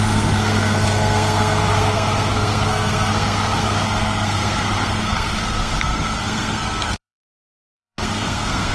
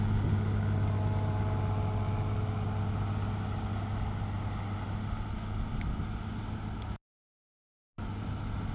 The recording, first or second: second